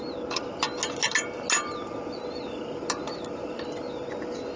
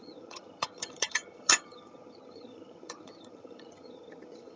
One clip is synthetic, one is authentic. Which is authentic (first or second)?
first